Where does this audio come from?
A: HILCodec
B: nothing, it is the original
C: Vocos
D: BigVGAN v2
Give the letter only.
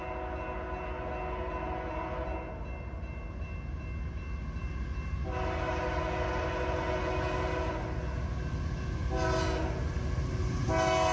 B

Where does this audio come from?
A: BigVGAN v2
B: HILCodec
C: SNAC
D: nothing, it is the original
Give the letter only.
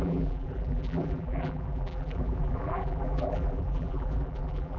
A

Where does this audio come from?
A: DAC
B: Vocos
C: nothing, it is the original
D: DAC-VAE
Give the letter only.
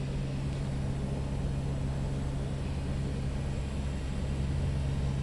C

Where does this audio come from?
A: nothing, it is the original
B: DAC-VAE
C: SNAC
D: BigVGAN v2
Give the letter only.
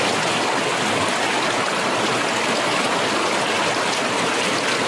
A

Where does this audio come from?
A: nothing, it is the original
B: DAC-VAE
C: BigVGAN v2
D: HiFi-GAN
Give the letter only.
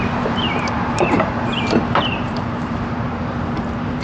C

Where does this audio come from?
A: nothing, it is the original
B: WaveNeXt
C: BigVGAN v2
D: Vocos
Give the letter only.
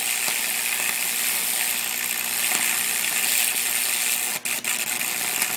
A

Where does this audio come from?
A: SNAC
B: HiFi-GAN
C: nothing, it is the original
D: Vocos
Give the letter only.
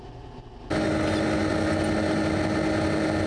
C